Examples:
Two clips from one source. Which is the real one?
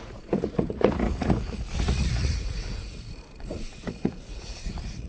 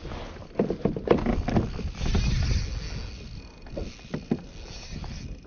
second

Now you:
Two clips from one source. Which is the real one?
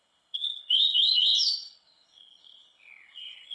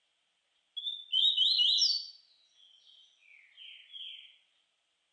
second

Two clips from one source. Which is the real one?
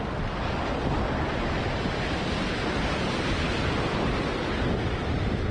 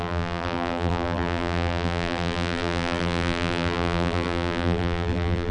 first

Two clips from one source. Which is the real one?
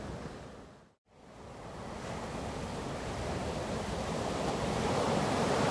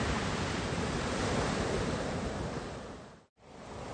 first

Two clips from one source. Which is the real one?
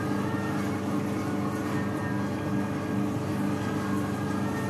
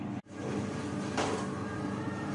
first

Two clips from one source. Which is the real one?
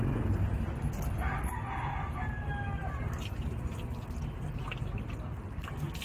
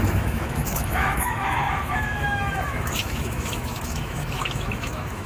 first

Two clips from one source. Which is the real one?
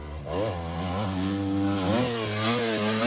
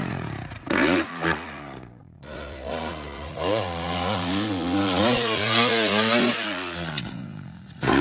first